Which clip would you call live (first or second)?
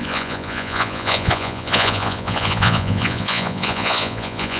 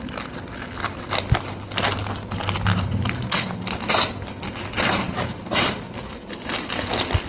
second